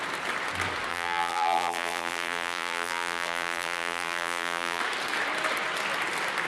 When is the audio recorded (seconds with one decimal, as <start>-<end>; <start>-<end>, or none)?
0.0-0.9; 4.8-6.5